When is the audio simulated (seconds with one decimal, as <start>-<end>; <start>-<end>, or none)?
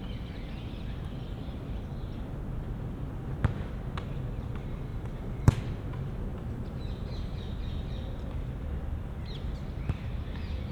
4.9-5.6; 6.3-7.4